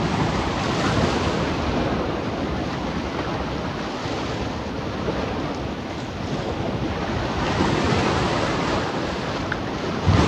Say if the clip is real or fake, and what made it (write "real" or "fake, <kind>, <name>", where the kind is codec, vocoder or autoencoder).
real